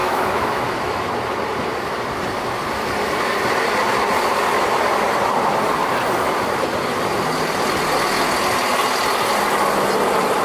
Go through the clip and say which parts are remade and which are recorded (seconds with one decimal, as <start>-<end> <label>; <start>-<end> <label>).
0.0-1.1 remade; 1.1-10.4 recorded

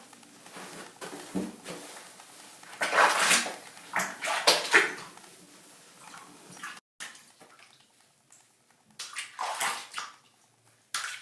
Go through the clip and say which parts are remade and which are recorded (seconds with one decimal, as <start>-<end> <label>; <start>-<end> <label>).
0.0-11.2 recorded